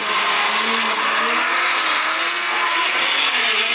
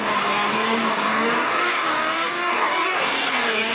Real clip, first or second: first